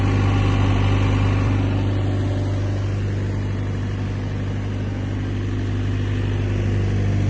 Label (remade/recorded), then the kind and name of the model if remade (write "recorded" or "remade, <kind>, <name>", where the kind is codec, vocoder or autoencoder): recorded